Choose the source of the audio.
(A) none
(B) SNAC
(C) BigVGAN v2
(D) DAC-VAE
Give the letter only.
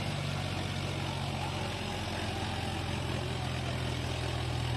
A